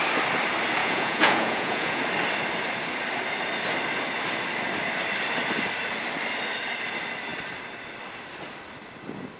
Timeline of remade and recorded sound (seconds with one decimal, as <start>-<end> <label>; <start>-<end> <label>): 0.0-0.8 recorded; 0.8-2.0 remade; 2.0-9.4 recorded